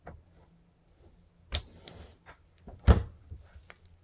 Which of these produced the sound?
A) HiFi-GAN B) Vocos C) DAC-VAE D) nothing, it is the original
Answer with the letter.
D